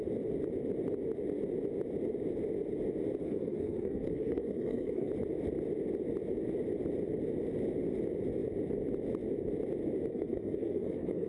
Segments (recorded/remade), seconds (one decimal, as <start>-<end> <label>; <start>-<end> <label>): 0.0-3.2 recorded; 3.2-5.1 remade; 5.1-10.1 recorded; 10.1-11.3 remade